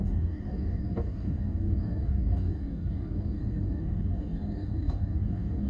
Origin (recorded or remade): remade